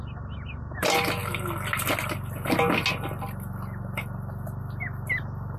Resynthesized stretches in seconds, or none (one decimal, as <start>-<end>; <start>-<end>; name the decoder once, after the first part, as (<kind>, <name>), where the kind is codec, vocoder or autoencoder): none